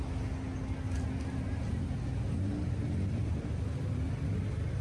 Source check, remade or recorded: recorded